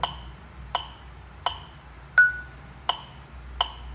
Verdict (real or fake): real